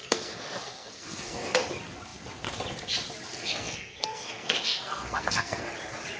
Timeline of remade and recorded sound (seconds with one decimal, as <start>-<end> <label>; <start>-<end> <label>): 0.0-1.7 remade; 1.7-3.3 recorded; 3.3-5.7 remade; 5.7-6.2 recorded